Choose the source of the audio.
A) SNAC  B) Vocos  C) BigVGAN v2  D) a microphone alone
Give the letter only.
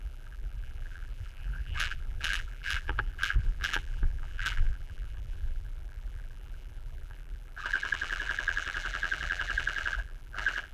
C